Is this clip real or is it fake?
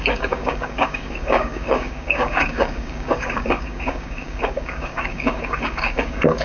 fake